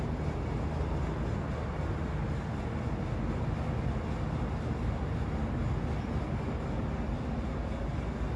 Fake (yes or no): no